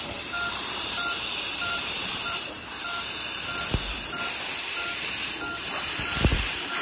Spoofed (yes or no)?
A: yes